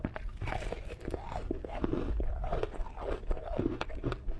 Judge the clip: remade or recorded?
recorded